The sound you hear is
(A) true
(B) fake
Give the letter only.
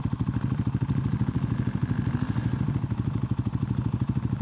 A